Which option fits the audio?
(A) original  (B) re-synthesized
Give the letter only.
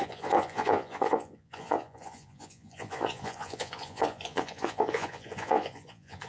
B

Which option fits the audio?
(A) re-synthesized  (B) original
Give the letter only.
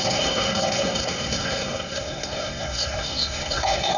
A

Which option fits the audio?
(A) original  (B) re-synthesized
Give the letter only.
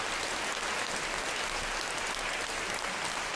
A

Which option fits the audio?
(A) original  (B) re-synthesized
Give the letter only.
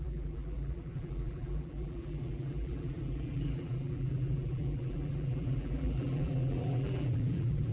B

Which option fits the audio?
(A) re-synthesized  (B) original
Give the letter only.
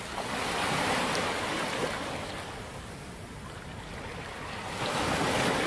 B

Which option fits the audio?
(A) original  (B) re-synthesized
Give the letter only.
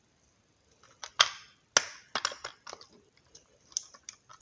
A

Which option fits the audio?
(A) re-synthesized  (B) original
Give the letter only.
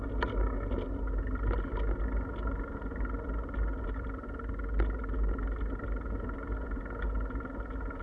B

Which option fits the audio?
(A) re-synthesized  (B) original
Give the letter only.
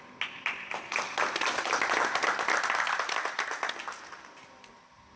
B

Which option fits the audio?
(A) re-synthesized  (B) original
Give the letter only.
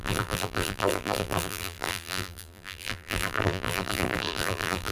A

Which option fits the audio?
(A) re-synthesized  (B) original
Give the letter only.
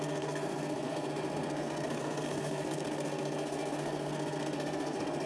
A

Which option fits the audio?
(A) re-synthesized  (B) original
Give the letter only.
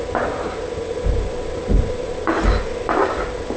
B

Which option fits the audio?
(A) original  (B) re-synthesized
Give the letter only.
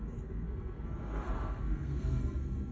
B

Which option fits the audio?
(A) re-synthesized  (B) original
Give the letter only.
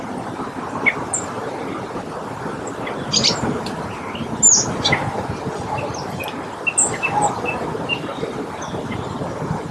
B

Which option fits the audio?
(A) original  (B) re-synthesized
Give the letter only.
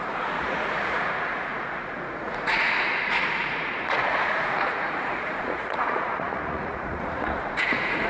B